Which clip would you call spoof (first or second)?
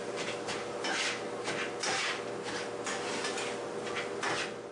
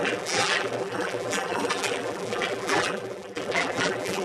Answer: second